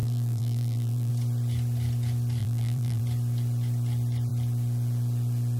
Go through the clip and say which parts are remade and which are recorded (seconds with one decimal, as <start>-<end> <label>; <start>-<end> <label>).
0.0-1.1 remade; 1.1-2.4 recorded; 2.4-3.0 remade; 3.0-5.6 recorded